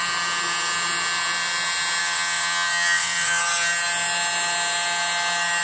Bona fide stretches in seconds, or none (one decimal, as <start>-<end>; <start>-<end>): 0.0-2.0; 3.4-5.6